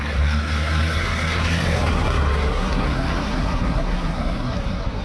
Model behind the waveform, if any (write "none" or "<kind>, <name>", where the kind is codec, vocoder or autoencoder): codec, SNAC